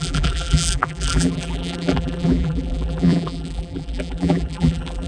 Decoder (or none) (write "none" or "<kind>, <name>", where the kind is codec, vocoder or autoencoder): vocoder, BigVGAN v2